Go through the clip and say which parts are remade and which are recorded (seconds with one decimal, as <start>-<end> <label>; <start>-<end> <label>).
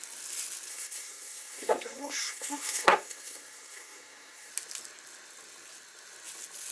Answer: 0.0-0.7 recorded; 0.7-4.5 remade; 4.5-6.7 recorded